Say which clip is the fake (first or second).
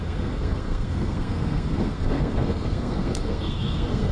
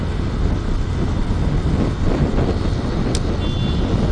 first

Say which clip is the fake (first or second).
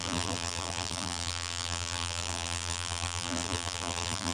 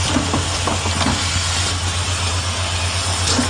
first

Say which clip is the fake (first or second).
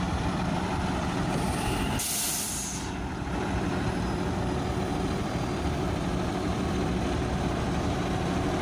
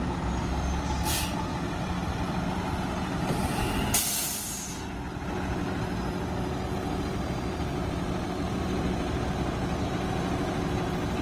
first